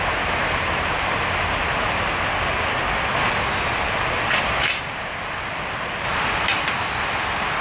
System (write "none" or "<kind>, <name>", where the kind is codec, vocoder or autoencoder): none